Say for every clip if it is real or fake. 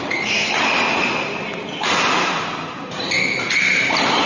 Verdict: real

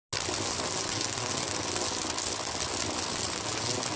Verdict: real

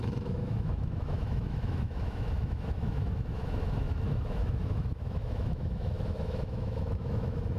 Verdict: fake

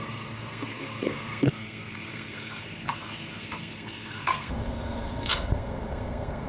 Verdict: fake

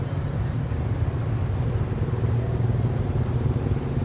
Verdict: real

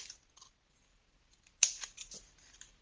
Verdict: real